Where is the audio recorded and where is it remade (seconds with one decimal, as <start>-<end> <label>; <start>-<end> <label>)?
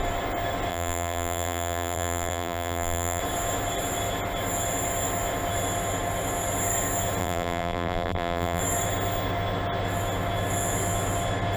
0.0-0.7 recorded; 0.7-3.2 remade; 3.2-7.2 recorded; 7.2-8.6 remade; 8.6-11.6 recorded